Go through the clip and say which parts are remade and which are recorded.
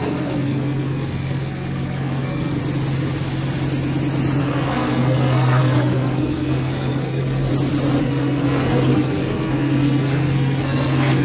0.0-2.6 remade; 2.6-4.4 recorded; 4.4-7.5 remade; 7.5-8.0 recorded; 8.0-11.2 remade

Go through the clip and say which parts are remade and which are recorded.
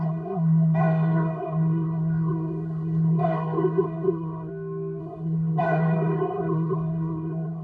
0.0-4.5 remade; 4.5-5.0 recorded; 5.0-7.6 remade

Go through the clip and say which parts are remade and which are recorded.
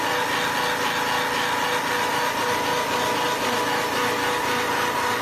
0.0-5.2 recorded